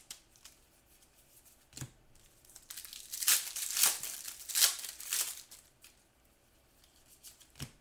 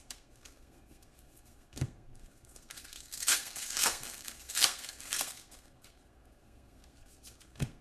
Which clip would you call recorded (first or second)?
first